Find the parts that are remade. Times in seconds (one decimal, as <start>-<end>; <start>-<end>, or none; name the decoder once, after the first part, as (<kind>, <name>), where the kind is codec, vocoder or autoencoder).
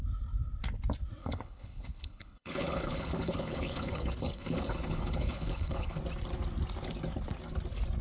1.2-6.0 (codec, HILCodec)